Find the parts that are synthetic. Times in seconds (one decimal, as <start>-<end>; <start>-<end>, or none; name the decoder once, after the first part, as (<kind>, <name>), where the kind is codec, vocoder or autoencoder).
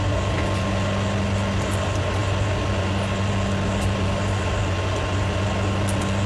none